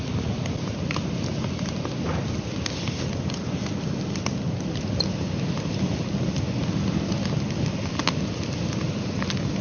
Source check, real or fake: real